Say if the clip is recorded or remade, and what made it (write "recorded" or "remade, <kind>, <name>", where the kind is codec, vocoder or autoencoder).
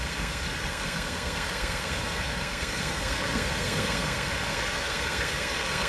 remade, codec, SNAC